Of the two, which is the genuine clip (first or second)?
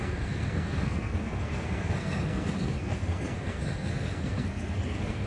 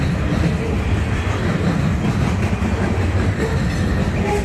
second